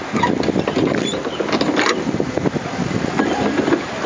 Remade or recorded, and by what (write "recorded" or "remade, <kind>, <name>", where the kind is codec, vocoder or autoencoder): recorded